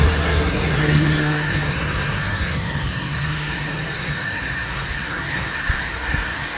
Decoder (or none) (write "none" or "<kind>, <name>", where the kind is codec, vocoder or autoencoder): codec, SNAC